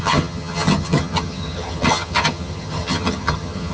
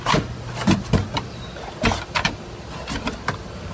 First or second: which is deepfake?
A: first